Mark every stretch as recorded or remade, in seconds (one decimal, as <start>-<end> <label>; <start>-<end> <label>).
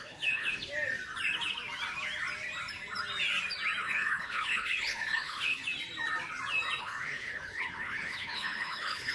0.0-0.7 remade; 0.7-3.8 recorded; 3.8-5.6 remade; 5.6-6.8 recorded; 6.8-9.1 remade